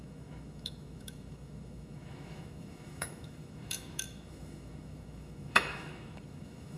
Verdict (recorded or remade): remade